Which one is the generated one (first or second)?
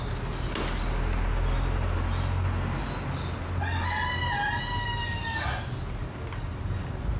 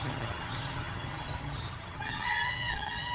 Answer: second